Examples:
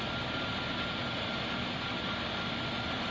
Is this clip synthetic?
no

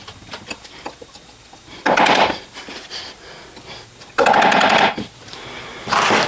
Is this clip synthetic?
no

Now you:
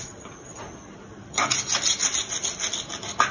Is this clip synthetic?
no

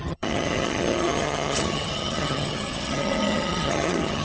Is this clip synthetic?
yes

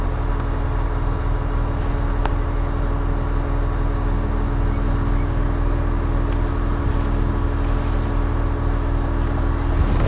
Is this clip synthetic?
no